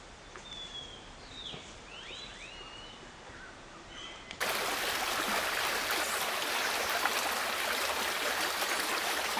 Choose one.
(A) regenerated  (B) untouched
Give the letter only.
B